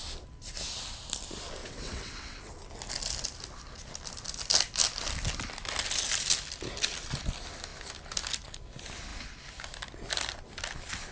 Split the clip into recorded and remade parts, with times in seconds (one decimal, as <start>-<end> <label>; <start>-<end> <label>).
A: 0.0-1.6 recorded; 1.6-2.5 remade; 2.5-11.1 recorded